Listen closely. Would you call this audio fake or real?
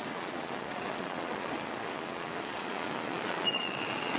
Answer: fake